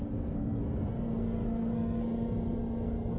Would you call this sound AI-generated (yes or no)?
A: yes